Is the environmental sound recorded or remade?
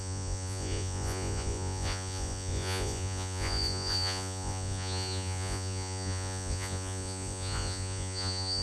remade